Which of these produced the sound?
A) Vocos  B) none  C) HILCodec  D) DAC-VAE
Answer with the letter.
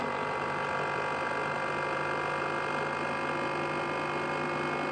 B